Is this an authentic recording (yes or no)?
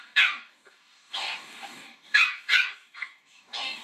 no